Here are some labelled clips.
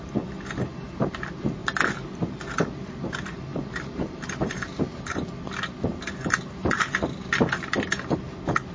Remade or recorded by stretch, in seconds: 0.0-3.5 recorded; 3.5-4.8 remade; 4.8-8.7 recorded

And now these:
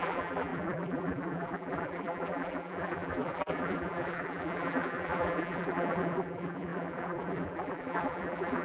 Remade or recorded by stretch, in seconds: 0.0-8.6 remade

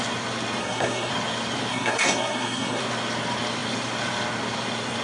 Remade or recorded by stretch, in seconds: 0.0-0.6 recorded; 0.6-1.1 remade; 1.1-1.7 recorded; 1.7-2.8 remade; 2.8-5.0 recorded

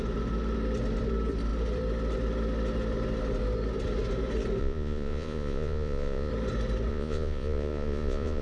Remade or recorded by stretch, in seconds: 0.0-4.6 recorded; 4.6-6.3 remade; 6.3-6.9 recorded; 6.9-8.4 remade